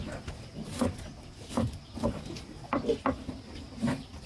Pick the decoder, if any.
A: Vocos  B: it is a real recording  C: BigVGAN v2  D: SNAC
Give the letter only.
C